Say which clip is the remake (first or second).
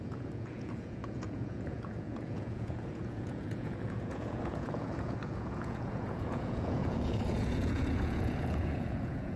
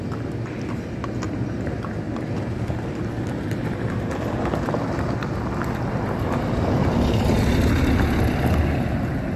first